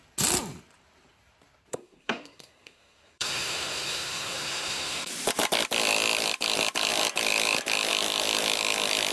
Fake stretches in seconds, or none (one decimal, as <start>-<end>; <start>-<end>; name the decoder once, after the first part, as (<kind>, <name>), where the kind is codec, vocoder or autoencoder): 1.7-5.1 (codec, SNAC)